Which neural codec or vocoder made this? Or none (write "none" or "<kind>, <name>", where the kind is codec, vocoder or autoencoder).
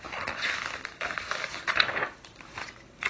none